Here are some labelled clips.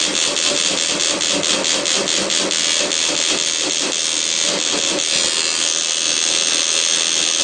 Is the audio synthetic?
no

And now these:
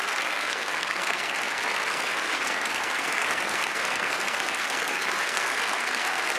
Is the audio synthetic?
yes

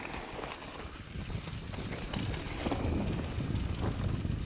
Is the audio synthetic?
no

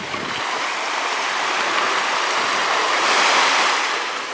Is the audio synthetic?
no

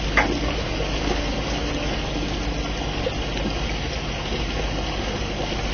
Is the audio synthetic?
no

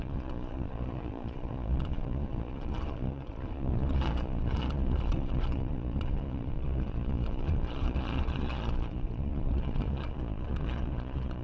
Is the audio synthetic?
yes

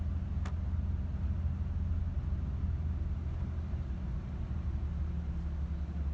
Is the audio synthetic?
no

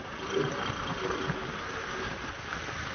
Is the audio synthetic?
no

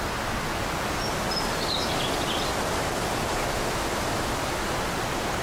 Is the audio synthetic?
no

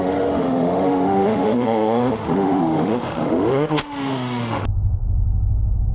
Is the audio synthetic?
yes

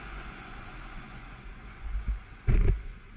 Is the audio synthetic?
yes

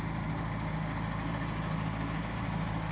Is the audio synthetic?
no